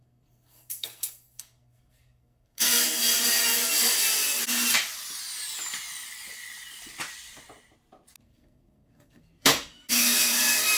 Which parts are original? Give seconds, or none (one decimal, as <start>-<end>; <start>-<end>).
3.0-8.2